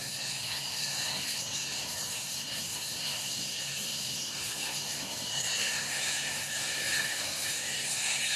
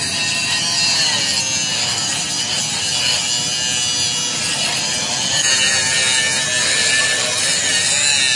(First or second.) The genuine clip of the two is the second